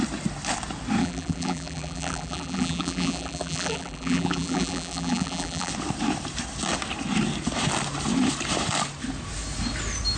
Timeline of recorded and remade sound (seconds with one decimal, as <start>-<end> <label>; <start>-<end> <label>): 0.0-1.0 recorded; 1.0-5.7 remade; 5.7-10.2 recorded